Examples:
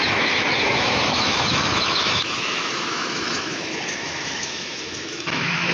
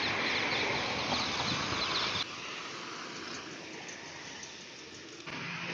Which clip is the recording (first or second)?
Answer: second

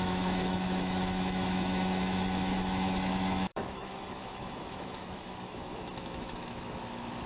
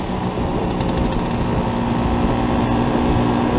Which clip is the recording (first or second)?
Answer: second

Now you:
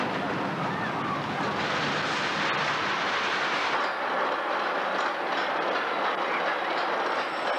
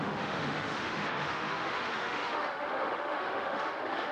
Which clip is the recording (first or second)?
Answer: first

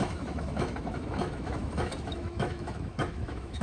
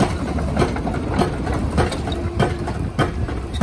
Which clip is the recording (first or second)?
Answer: second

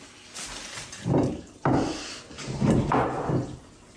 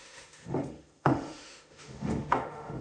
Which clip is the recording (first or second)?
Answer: first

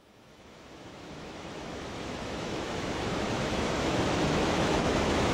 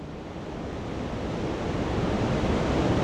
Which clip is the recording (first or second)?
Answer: second